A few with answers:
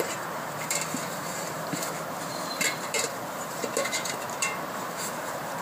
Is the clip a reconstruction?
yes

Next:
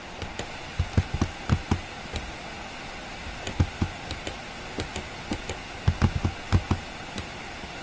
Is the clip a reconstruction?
no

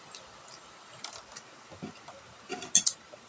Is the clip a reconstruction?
no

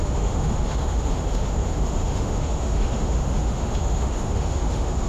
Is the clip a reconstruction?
yes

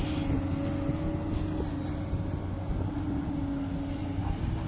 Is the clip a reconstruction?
no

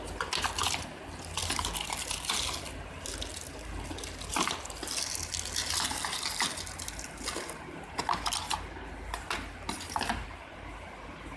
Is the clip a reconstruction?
no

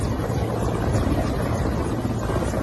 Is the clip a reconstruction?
no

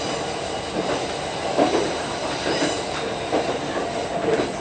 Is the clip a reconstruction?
no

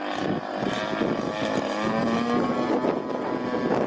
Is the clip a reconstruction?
no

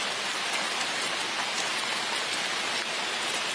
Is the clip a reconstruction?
no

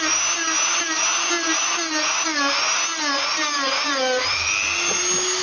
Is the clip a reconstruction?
no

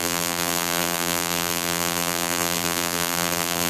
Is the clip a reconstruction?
yes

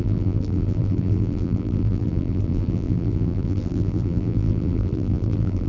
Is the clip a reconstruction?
yes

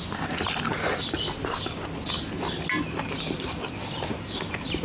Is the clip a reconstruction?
no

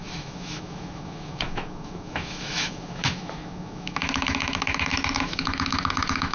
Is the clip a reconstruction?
yes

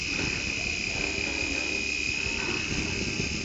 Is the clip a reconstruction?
no